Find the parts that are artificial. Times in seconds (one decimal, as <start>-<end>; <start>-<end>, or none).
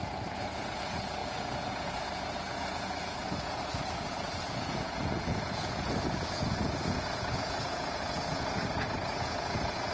0.0-9.9